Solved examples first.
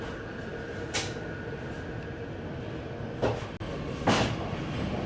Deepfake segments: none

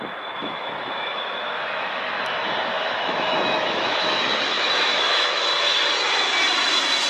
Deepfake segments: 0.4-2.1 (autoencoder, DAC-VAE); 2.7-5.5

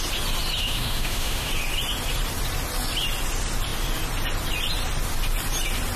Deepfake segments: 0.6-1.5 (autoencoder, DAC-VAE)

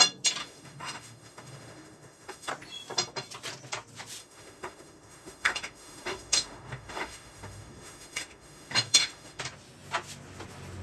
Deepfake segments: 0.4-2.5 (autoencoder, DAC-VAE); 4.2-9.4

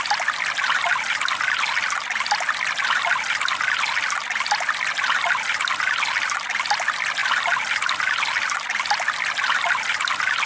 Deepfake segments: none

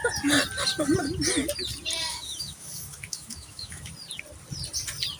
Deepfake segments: 2.1-3.9 (autoencoder, DAC-VAE)